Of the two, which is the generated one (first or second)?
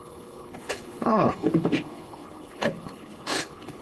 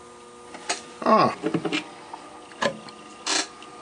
first